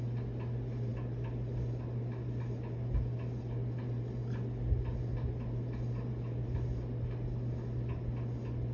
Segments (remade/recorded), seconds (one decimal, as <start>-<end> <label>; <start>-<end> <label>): 0.0-8.7 recorded